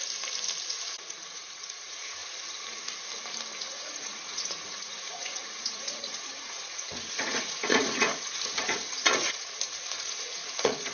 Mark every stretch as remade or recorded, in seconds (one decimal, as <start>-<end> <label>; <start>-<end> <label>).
0.0-0.7 recorded; 0.7-2.2 remade; 2.2-3.6 recorded; 3.6-10.9 remade